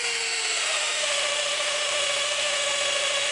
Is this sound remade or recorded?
remade